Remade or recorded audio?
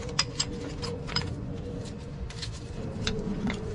remade